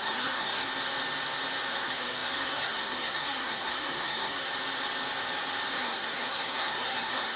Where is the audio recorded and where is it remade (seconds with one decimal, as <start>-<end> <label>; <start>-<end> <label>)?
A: 0.0-0.7 remade; 0.7-1.7 recorded; 1.7-4.5 remade; 4.5-5.7 recorded; 5.7-7.4 remade